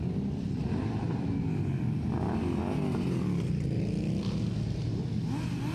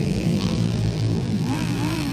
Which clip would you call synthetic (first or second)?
second